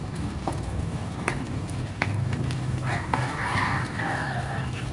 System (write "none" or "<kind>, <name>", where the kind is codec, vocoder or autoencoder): codec, DAC